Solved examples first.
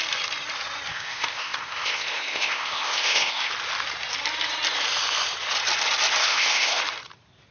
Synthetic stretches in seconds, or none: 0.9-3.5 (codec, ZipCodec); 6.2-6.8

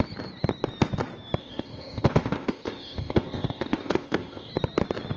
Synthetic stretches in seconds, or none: 1.4-4.5 (codec, ZipCodec)